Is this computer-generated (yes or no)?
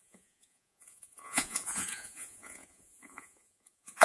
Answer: yes